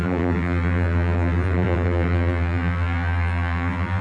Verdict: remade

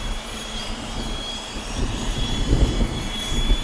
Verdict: remade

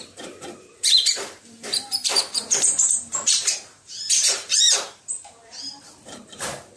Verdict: remade